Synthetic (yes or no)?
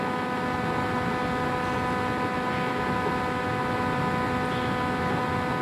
no